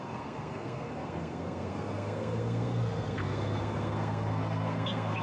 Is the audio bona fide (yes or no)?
no